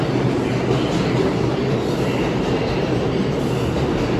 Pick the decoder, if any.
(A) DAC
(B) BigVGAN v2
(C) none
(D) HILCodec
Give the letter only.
C